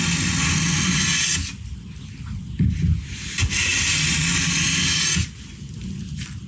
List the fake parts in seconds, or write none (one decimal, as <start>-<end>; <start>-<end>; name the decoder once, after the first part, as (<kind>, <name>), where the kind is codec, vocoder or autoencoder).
none